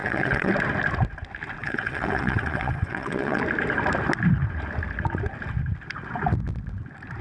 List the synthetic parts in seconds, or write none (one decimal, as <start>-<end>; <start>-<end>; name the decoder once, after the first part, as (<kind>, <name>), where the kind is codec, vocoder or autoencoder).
0.0-0.5 (vocoder, WaveNeXt); 1.6-3.4